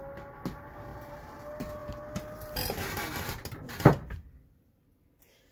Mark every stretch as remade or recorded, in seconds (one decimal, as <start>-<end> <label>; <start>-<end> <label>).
0.0-0.9 recorded; 0.9-1.4 remade; 1.4-5.5 recorded